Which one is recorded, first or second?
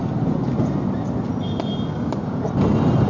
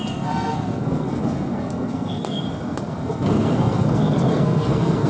first